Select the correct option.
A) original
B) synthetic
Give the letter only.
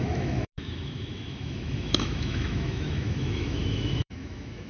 B